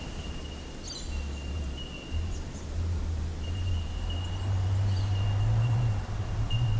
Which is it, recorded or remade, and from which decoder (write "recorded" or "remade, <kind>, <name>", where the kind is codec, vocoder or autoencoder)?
recorded